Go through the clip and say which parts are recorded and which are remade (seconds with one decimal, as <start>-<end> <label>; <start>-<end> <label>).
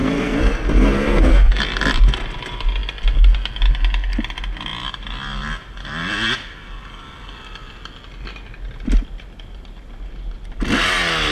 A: 0.0-1.6 remade; 1.6-11.3 recorded